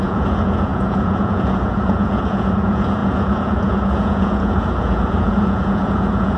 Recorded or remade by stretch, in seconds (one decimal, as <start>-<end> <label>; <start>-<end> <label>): 0.0-6.4 remade